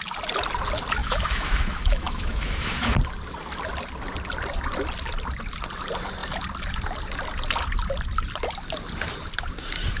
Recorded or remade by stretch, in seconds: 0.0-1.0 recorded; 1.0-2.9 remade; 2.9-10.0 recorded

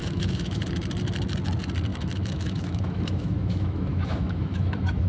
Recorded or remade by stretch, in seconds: 0.0-0.6 remade; 0.6-1.9 recorded; 1.9-5.1 remade

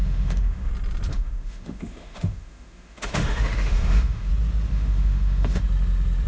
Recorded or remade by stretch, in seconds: 0.0-0.7 remade; 0.7-1.1 recorded; 1.1-4.3 remade; 4.3-4.7 recorded; 4.7-5.6 remade; 5.6-6.3 recorded

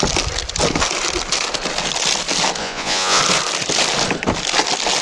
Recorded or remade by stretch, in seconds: 0.0-2.6 recorded; 2.6-3.2 remade; 3.2-5.0 recorded

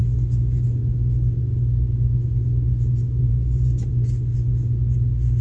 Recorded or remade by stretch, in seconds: 0.0-3.2 recorded; 3.2-3.9 remade; 3.9-5.4 recorded

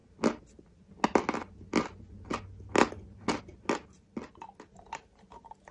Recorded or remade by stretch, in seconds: 0.0-5.7 recorded

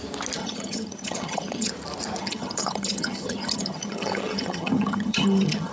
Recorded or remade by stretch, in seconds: 0.0-0.4 recorded; 0.4-1.7 remade; 1.7-2.2 recorded; 2.2-5.7 remade